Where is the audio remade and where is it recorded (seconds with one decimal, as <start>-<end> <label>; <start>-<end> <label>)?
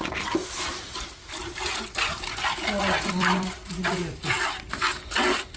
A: 0.0-2.8 recorded; 2.8-4.5 remade; 4.5-5.6 recorded